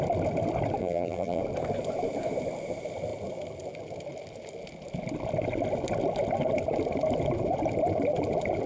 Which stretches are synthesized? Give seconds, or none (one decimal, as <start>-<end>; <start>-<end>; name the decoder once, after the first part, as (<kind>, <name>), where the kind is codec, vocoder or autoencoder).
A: 0.8-1.4 (vocoder, BigVGAN v2)